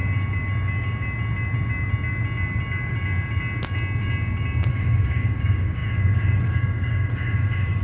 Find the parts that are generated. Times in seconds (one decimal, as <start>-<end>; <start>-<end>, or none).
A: 4.7-7.8